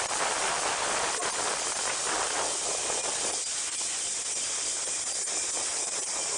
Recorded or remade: remade